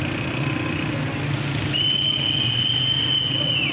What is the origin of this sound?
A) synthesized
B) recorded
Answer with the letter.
B